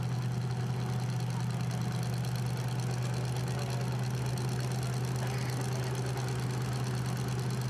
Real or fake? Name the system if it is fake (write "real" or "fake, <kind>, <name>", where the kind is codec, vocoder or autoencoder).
real